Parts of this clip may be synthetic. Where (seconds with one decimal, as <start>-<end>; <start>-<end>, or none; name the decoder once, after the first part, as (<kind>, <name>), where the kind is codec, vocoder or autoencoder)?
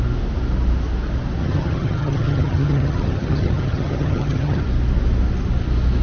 1.4-4.6 (vocoder, HiFi-GAN)